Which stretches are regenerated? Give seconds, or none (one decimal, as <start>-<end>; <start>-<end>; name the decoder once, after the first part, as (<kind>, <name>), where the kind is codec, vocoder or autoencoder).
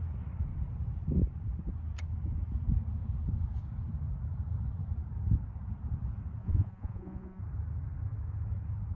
6.4-7.4 (vocoder, Vocos)